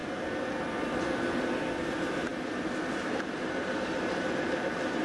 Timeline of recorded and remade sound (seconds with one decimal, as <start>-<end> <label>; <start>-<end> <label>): 0.0-1.8 recorded; 1.8-5.0 remade